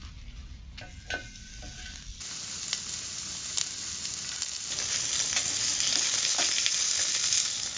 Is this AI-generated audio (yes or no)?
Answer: no